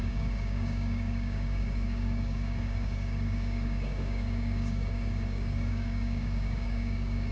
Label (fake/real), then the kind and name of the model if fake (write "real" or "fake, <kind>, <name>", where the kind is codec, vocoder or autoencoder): fake, codec, DAC